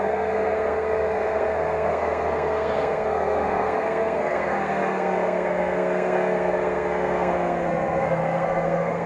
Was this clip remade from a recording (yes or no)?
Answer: yes